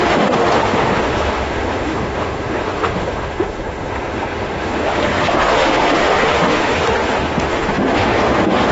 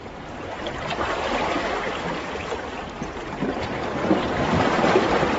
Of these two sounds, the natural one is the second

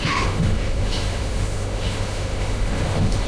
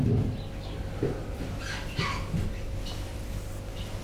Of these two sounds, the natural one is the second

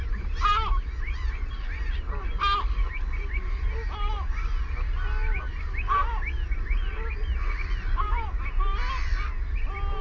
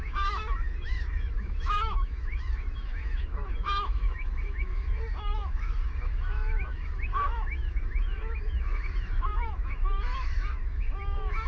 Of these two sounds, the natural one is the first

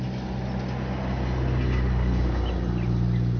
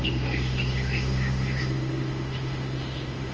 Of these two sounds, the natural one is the first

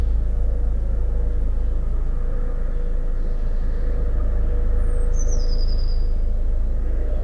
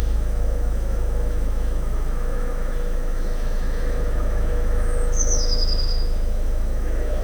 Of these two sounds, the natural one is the first